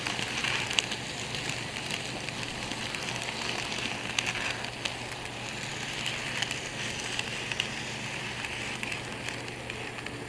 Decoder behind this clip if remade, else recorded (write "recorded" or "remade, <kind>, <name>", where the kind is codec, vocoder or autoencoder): recorded